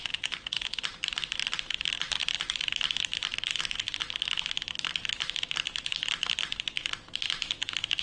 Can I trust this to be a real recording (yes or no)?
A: yes